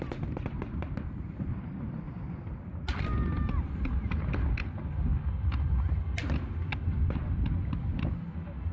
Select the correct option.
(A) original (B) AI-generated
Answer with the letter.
A